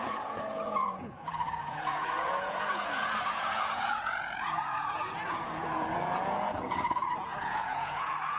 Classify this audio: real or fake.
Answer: fake